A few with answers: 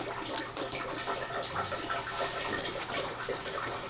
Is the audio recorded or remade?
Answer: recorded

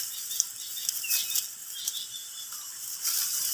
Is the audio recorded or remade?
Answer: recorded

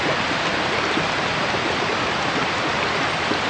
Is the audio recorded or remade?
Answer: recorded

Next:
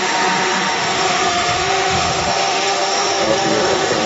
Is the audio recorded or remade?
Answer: remade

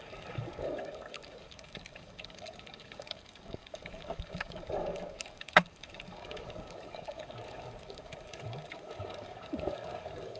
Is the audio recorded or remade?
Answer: remade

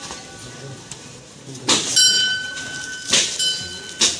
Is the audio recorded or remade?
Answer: recorded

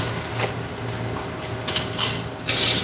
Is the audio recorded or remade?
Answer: recorded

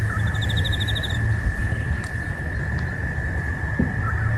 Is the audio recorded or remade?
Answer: recorded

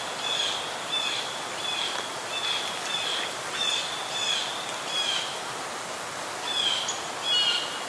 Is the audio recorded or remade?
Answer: recorded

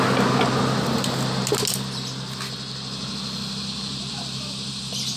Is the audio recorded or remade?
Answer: recorded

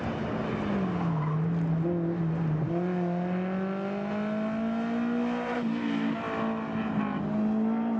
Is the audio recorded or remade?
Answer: recorded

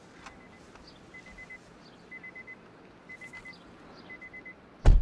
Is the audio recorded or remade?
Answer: recorded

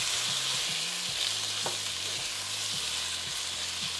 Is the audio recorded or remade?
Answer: recorded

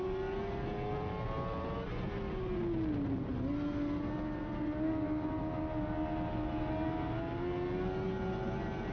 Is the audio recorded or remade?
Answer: recorded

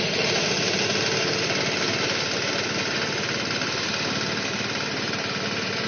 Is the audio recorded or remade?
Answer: recorded